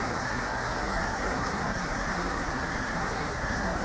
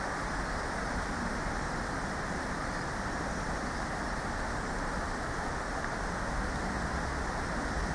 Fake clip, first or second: first